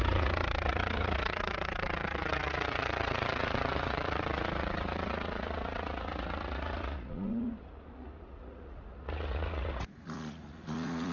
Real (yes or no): no